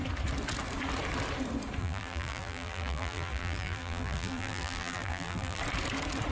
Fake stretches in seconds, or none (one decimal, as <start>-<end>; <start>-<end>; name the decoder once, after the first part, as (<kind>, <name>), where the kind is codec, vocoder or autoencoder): 1.8-5.6 (vocoder, BigVGAN v2)